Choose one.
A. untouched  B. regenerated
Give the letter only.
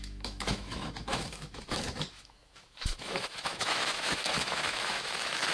B